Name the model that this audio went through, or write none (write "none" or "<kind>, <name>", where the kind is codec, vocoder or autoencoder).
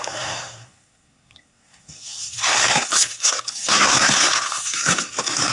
codec, SNAC